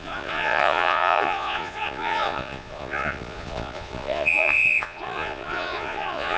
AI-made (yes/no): yes